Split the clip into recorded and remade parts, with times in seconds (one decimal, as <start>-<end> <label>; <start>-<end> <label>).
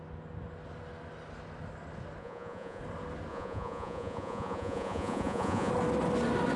0.0-2.2 recorded; 2.2-2.8 remade; 2.8-3.3 recorded; 3.3-5.7 remade; 5.7-6.6 recorded